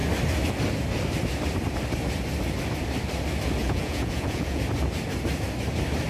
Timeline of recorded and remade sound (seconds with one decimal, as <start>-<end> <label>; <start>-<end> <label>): 0.0-3.6 recorded; 3.6-4.6 remade; 4.6-6.1 recorded